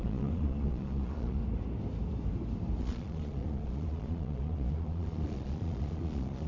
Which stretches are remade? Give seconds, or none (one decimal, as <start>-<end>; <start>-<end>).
0.0-1.4; 2.8-6.5